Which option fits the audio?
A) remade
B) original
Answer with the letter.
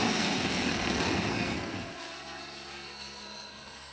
A